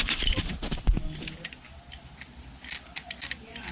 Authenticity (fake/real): real